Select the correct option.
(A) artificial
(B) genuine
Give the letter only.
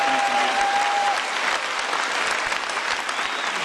B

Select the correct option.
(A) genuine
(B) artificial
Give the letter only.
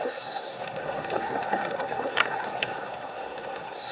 B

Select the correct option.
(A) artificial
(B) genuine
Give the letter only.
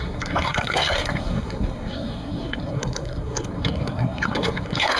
A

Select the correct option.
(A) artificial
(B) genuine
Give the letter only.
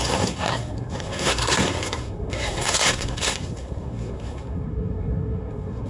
A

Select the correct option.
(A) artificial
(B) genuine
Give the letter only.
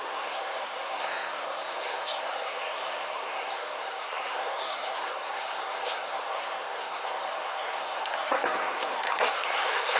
A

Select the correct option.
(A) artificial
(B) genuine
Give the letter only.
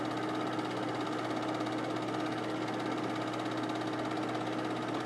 B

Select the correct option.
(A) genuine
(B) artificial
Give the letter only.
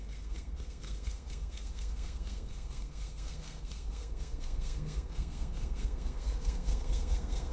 B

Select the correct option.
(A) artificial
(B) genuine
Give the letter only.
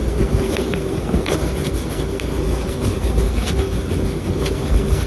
A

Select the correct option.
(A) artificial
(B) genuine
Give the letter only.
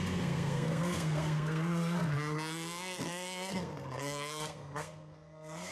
A